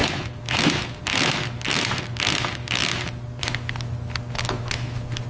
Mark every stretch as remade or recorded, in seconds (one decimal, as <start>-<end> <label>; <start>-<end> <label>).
0.0-5.3 recorded